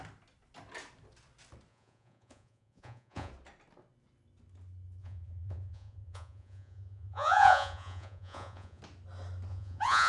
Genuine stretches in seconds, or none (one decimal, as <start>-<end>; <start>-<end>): 0.0-1.7; 3.3-5.0; 8.8-9.5